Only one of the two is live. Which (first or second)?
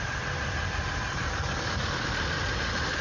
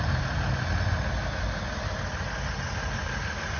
second